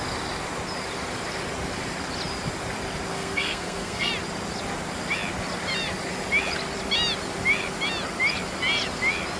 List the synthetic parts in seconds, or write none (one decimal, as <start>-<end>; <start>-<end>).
3.1-4.1

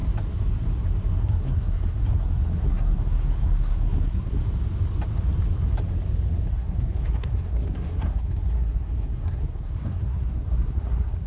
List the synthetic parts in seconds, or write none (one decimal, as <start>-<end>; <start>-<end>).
1.2-4.4; 6.5-11.3

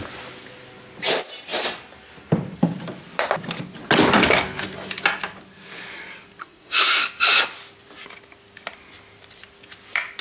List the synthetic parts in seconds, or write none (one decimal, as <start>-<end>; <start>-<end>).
6.4-7.0

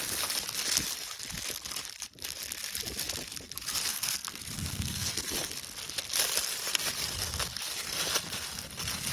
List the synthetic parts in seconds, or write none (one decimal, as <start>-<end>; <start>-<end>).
3.9-5.2

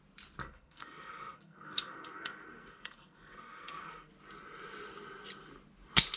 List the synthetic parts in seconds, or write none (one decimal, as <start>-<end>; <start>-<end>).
0.4-4.1

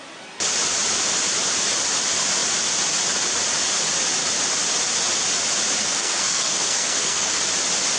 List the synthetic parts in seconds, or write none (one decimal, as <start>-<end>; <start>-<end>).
5.8-7.4

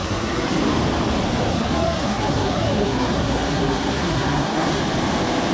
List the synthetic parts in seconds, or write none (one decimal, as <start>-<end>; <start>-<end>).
0.0-0.6; 1.5-4.8